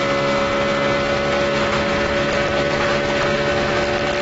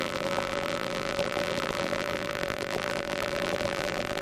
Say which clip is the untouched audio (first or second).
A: first